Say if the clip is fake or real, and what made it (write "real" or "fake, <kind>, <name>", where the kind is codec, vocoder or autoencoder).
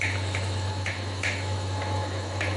fake, autoencoder, DAC-VAE